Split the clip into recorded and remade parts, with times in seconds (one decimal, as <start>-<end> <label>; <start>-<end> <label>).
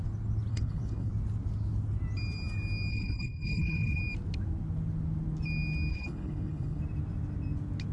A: 0.0-0.5 recorded; 0.5-1.1 remade; 1.1-2.9 recorded; 2.9-4.0 remade; 4.0-5.9 recorded; 5.9-6.8 remade; 6.8-7.9 recorded